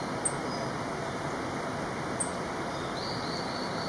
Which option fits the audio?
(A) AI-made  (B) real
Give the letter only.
B